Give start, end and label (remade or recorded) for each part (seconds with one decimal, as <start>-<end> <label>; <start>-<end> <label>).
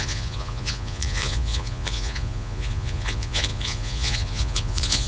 0.0-5.1 remade